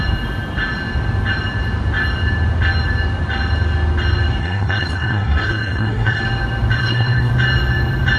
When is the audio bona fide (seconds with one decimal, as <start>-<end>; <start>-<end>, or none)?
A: 0.0-4.4; 6.2-6.8; 7.3-8.2